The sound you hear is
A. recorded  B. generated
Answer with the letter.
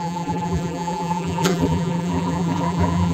B